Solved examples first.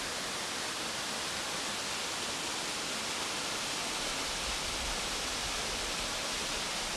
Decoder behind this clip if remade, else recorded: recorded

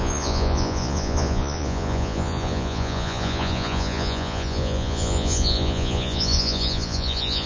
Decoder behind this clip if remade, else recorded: remade, vocoder, Vocos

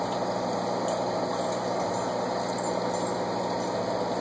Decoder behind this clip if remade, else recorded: recorded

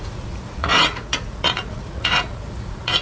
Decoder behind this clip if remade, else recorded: remade, vocoder, Vocos